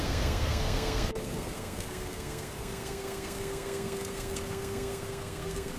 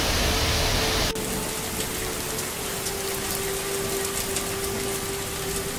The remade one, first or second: first